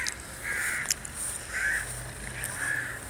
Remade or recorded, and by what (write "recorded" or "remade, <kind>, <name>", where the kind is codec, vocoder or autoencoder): recorded